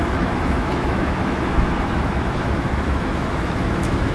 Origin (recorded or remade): remade